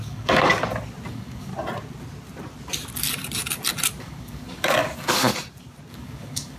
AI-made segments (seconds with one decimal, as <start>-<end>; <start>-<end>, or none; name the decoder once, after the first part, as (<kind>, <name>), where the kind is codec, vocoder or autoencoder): 0.0-0.5 (codec, DAC); 1.1-1.5; 4.0-5.3; 5.9-6.6